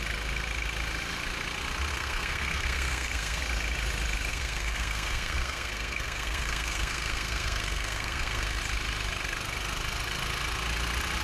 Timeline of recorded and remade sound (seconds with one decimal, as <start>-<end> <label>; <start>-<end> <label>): 0.0-1.9 recorded; 1.9-3.4 remade; 3.4-4.3 recorded; 4.3-8.6 remade; 8.6-11.2 recorded